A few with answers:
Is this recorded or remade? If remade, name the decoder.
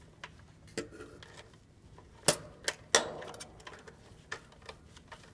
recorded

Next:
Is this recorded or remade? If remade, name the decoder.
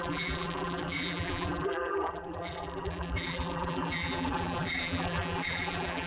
remade, vocoder, BigVGAN v2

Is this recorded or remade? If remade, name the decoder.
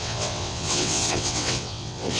remade, vocoder, WaveNeXt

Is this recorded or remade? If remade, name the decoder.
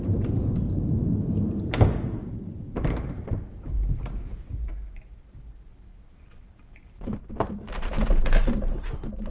remade, vocoder, BigVGAN v2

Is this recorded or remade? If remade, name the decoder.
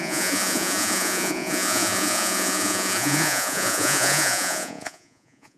remade, vocoder, Vocos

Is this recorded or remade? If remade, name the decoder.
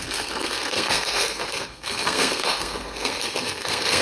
remade, codec, SNAC